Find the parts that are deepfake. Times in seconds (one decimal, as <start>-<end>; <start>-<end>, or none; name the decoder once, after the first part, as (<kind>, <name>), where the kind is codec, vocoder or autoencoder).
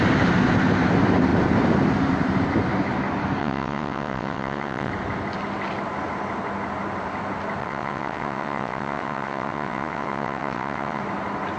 3.4-4.9 (vocoder, WaveNeXt); 7.6-11.0